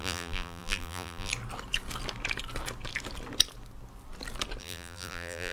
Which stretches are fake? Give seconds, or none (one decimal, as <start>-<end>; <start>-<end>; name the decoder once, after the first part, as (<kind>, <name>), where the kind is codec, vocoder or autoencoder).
0.0-1.3 (vocoder, BigVGAN v2); 4.6-5.5